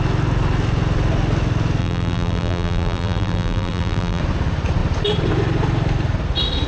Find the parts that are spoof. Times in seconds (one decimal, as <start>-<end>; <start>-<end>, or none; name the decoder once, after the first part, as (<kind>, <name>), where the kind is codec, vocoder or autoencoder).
1.8-4.2 (vocoder, BigVGAN v2)